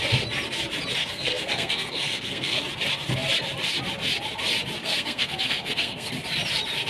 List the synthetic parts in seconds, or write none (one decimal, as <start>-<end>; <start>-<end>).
1.0-2.6; 4.8-6.1